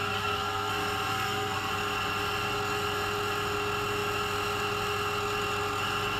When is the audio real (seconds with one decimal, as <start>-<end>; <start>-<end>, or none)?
0.7-1.1; 1.7-6.2